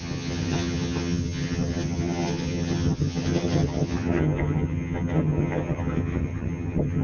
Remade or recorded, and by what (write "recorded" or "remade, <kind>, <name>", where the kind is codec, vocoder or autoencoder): remade, vocoder, HiFi-GAN